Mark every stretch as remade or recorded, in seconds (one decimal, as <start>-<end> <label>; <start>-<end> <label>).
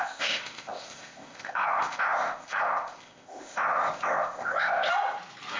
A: 0.0-4.9 remade; 4.9-5.6 recorded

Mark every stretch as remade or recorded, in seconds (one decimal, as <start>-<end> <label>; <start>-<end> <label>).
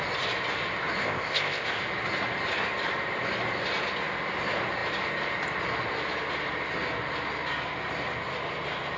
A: 0.0-1.0 recorded; 1.0-1.8 remade; 1.8-9.0 recorded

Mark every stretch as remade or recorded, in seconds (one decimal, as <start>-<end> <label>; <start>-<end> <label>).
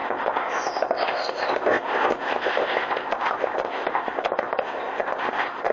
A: 0.0-5.7 remade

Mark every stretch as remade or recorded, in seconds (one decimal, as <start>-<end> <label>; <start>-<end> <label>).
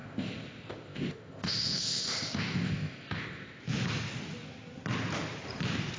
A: 0.0-3.6 remade; 3.6-6.0 recorded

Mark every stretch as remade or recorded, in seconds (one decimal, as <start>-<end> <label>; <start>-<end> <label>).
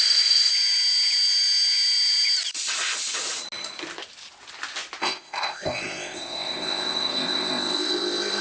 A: 0.0-0.5 remade; 0.5-5.0 recorded; 5.0-8.4 remade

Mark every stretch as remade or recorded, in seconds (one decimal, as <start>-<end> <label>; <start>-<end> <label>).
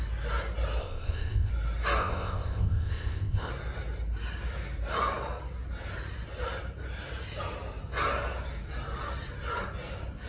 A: 0.0-0.8 recorded; 0.8-1.5 remade; 1.5-2.0 recorded; 2.0-3.5 remade; 3.5-10.3 recorded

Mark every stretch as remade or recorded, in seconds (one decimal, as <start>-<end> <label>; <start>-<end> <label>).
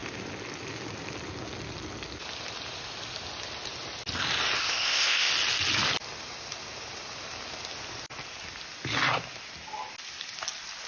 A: 0.0-4.6 recorded; 4.6-5.3 remade; 5.3-10.9 recorded